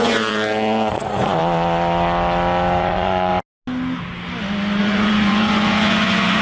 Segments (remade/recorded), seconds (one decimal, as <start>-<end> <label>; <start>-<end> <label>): 0.0-1.4 remade; 1.4-2.8 recorded; 2.8-3.3 remade; 3.3-4.8 recorded; 4.8-6.4 remade